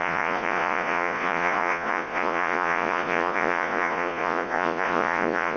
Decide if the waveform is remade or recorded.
remade